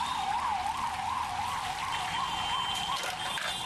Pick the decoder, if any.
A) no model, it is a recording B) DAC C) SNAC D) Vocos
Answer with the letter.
A